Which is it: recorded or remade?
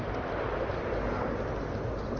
recorded